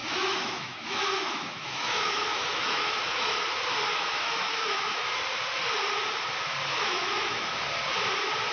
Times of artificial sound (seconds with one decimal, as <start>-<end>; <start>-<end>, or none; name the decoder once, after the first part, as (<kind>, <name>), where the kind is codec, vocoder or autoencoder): 0.0-3.4 (autoencoder, DAC-VAE); 3.9-5.2; 6.7-7.5